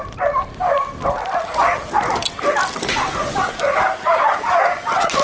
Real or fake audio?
real